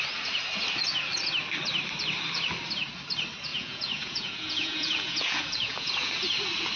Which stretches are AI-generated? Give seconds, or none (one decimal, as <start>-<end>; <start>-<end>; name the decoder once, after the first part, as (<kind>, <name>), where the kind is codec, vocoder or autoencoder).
3.5-6.1 (vocoder, Vocos)